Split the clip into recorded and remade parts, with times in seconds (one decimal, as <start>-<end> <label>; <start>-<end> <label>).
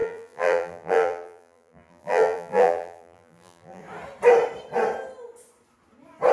0.0-3.8 remade; 3.8-6.3 recorded